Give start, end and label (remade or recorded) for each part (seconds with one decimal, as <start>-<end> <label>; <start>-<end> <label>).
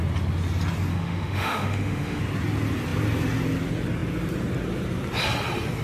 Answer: 0.0-0.9 recorded; 0.9-2.2 remade; 2.2-5.8 recorded